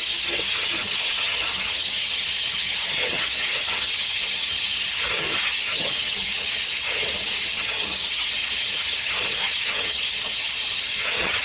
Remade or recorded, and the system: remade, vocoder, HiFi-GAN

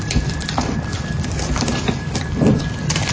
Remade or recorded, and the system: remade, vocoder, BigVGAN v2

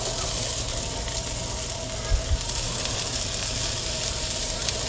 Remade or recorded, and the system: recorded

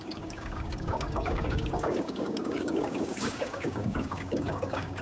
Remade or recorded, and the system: remade, codec, DAC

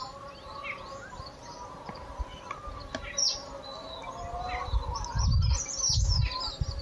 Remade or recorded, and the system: recorded